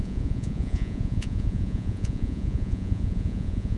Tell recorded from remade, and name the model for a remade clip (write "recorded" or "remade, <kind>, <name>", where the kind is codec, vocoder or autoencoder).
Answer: remade, vocoder, Vocos